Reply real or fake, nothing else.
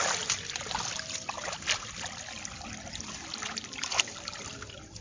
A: fake